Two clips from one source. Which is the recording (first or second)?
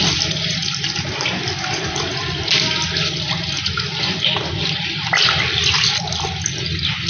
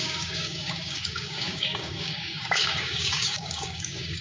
first